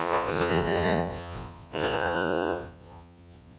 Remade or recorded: remade